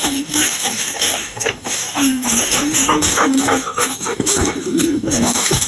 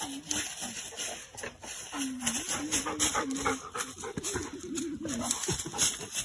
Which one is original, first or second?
second